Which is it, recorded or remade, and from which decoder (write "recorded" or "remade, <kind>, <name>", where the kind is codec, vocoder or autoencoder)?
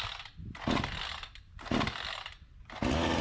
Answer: recorded